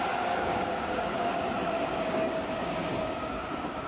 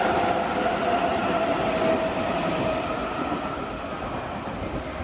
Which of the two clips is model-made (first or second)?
first